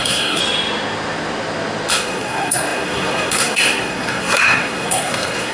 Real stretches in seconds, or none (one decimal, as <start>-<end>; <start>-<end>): 0.4-1.9